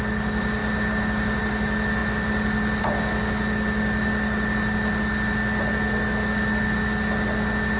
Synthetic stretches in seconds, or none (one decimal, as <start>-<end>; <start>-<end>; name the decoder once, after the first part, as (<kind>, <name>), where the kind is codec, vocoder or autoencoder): none